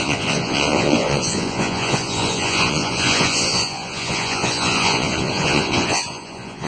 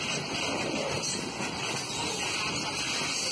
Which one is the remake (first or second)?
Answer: first